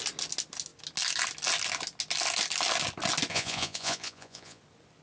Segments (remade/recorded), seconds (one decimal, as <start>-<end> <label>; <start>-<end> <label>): 0.0-3.3 recorded; 3.3-4.6 remade; 4.6-5.0 recorded